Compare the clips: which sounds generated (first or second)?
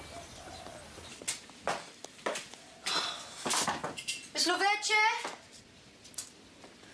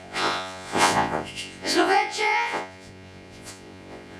second